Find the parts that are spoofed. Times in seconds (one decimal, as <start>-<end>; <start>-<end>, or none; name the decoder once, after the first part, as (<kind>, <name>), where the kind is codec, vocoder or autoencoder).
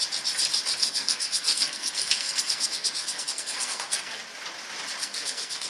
0.8-4.2 (codec, SNAC); 5.0-5.7